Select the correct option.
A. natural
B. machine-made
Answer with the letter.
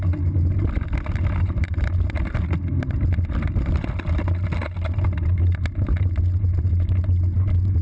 A